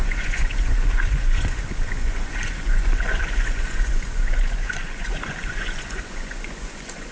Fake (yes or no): yes